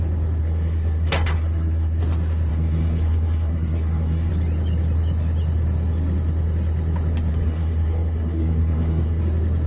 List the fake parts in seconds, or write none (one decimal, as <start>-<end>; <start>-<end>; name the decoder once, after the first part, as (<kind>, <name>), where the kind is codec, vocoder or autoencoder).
0.4-2.0 (codec, SNAC); 2.5-4.3; 7.3-9.2